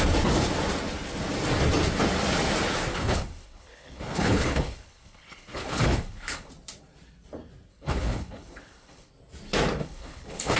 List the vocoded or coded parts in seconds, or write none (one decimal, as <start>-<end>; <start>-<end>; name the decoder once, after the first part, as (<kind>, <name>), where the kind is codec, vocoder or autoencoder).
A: 2.9-6.5 (codec, HILCodec); 7.7-9.1; 9.8-10.6